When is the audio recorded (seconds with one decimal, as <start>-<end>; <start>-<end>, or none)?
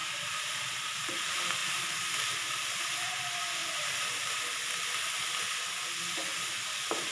0.5-1.6; 2.8-3.6; 4.4-7.1